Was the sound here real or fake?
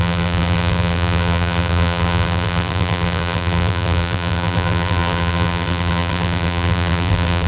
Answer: fake